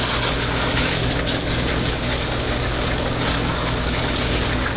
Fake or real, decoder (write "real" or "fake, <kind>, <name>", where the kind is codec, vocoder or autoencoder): fake, codec, DAC